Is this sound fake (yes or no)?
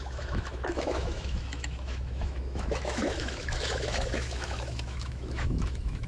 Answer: yes